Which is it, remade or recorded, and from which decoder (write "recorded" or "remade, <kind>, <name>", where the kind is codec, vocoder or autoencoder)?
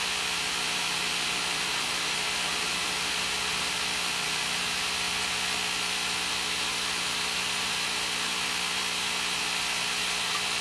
recorded